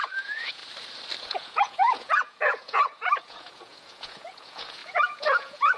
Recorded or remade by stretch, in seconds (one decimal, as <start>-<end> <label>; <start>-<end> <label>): 0.0-0.6 remade; 0.6-1.2 recorded; 1.2-5.8 remade